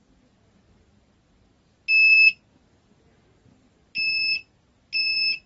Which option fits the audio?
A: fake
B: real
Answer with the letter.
B